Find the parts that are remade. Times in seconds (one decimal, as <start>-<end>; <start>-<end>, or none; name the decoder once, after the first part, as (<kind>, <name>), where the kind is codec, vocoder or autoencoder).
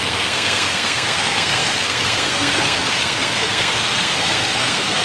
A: 0.0-5.0 (codec, SNAC)